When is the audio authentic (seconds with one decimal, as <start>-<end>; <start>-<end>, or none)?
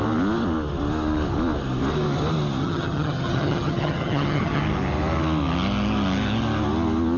0.0-2.6; 4.6-7.2